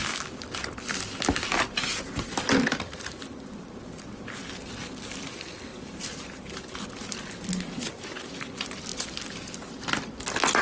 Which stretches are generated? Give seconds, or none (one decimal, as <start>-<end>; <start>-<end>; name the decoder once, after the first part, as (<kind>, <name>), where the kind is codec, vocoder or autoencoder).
none